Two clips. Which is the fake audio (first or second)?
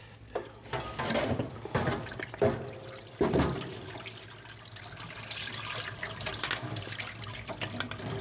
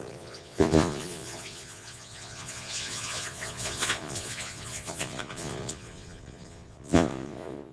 second